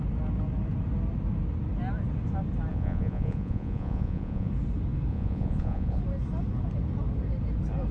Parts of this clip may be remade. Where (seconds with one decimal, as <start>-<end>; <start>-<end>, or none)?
2.7-4.5; 5.1-6.0

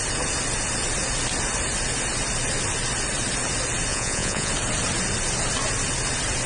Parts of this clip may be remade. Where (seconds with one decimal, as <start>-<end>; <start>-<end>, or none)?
3.9-4.5